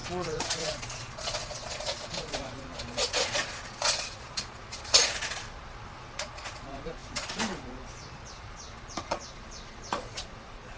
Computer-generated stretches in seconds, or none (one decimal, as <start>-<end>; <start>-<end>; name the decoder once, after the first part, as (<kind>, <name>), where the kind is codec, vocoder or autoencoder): 0.0-10.8 (vocoder, Vocos)